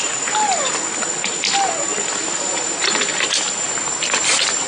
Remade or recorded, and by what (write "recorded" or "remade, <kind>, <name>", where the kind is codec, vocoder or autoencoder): recorded